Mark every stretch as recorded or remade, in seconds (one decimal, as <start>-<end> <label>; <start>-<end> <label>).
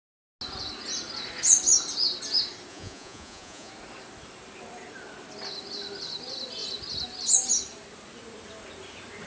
0.0-2.7 recorded; 2.7-3.7 remade; 3.7-9.3 recorded